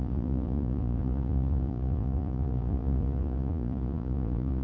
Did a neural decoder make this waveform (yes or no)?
yes